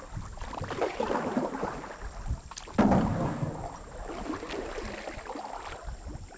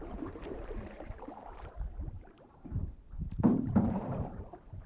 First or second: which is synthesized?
second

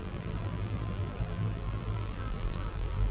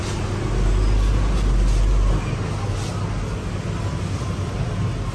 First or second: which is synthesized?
first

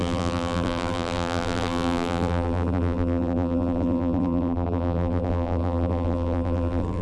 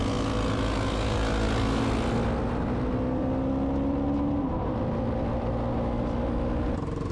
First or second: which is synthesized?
first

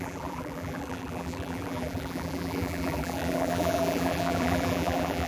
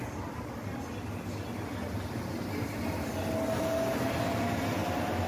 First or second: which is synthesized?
first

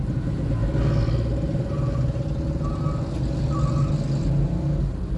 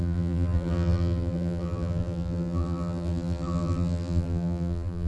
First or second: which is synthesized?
second